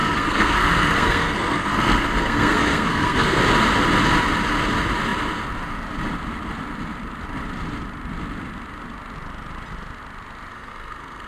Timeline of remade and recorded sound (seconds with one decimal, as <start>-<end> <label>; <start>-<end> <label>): 0.0-3.4 remade; 3.4-10.5 recorded; 10.5-11.3 remade